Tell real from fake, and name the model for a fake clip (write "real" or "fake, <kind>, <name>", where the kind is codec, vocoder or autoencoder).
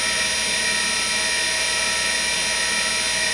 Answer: real